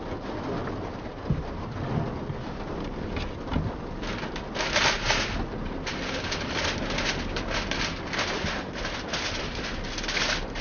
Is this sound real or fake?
real